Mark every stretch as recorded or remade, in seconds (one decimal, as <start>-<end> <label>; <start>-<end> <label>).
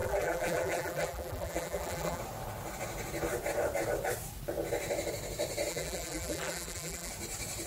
0.0-2.2 remade; 2.2-5.7 recorded; 5.7-7.1 remade; 7.1-7.7 recorded